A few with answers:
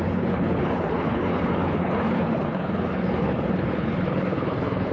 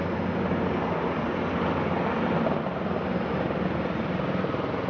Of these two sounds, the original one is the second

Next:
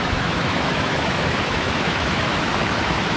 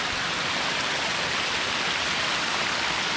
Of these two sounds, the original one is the second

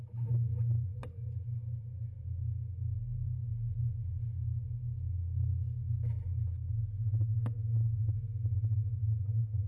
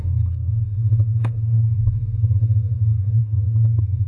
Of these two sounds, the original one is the first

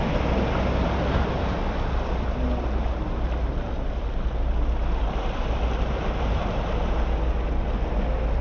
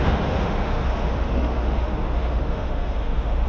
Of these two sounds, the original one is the first